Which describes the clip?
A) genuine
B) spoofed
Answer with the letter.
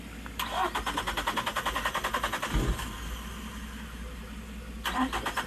A